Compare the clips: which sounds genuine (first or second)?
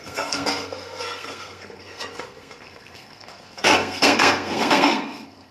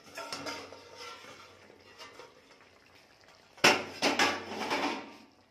second